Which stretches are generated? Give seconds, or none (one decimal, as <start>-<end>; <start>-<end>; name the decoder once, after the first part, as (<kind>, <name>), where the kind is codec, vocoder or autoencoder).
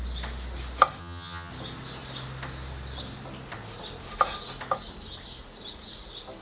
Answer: 1.0-1.5 (vocoder, HiFi-GAN)